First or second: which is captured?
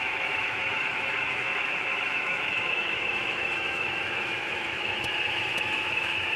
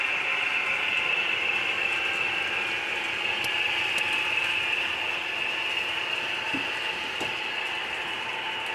second